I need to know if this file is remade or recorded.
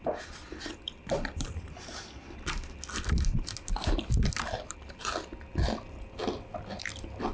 recorded